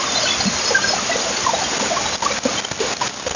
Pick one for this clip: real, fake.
real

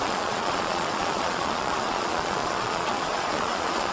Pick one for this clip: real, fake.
fake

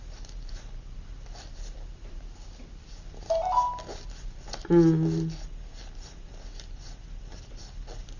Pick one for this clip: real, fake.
real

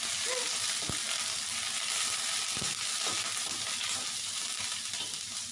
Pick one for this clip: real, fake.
real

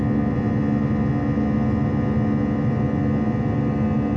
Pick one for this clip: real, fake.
real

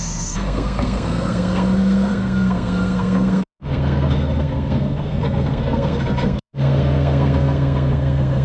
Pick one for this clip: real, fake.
fake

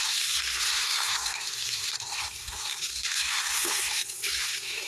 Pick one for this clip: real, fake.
fake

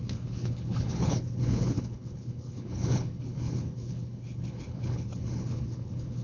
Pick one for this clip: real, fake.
fake